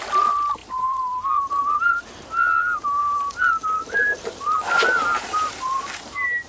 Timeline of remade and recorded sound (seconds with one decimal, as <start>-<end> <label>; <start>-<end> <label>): 0.0-0.6 recorded; 0.6-2.3 remade; 2.3-3.0 recorded; 3.0-4.2 remade; 4.2-5.0 recorded; 5.0-5.8 remade; 5.8-6.5 recorded